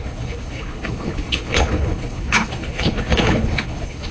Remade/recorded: remade